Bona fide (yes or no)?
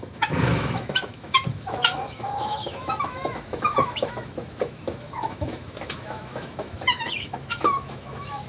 no